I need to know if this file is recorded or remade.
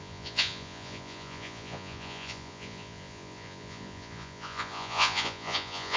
remade